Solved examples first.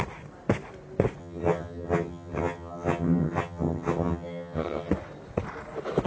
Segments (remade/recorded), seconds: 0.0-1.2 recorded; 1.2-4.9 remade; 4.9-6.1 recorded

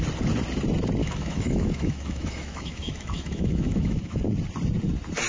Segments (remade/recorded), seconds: 0.0-1.0 recorded; 1.0-4.2 remade; 4.2-5.3 recorded